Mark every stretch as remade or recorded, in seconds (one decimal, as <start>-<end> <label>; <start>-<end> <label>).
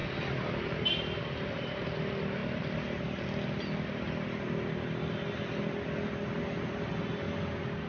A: 0.0-7.9 recorded